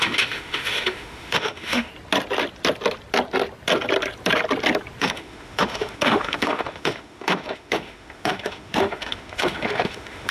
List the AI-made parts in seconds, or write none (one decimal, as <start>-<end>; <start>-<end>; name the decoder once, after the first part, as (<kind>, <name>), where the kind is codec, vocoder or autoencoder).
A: 0.0-1.9 (autoencoder, DAC-VAE); 5.0-10.3